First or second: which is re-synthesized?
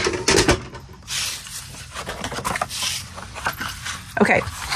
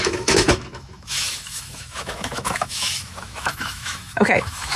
second